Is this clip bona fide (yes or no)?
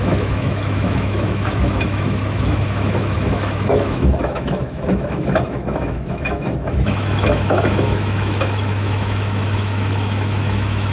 no